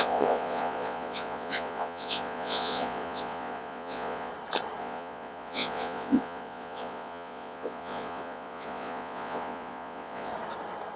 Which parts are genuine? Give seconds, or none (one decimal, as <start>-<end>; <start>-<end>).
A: 4.3-4.8; 10.3-11.0